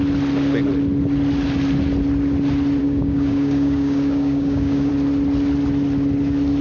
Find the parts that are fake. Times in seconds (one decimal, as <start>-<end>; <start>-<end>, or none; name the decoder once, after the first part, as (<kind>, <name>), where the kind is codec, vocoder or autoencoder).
2.8-4.9 (codec, DAC)